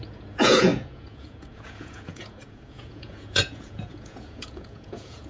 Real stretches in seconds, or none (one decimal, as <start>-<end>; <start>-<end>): none